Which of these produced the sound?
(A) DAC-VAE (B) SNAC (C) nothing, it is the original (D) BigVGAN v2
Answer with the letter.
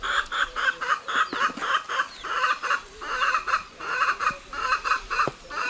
D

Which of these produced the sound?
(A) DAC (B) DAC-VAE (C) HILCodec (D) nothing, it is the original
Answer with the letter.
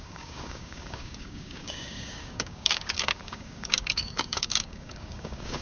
A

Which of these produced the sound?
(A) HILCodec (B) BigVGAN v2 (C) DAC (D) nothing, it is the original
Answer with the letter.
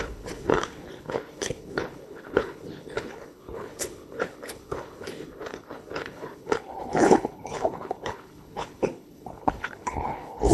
A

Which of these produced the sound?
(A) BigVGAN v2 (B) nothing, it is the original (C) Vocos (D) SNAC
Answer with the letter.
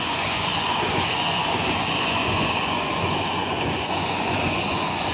C